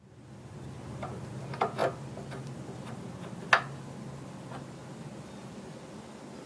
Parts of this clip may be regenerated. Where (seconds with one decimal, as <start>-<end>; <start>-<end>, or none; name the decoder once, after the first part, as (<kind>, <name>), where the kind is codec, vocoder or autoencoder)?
none